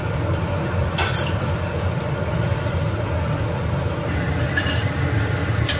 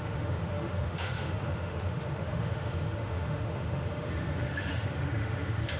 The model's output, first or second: second